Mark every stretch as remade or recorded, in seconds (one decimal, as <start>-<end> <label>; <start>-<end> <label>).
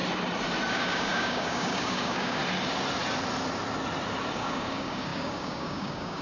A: 0.0-0.7 recorded; 0.7-2.4 remade; 2.4-4.3 recorded; 4.3-6.2 remade